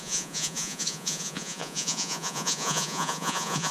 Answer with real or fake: fake